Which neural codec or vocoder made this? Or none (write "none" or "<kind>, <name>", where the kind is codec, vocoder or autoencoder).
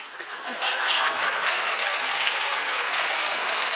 codec, SNAC